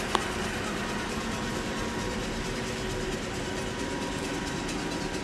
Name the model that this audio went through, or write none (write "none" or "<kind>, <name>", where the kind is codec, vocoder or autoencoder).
none